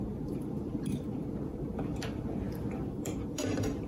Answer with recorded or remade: remade